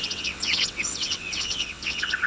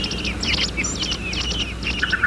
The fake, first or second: first